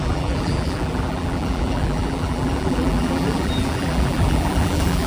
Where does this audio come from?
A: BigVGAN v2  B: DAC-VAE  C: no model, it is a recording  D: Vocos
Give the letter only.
A